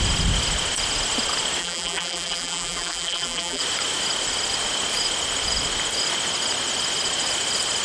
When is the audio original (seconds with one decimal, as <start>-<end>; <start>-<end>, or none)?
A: 0.0-1.6; 3.6-7.8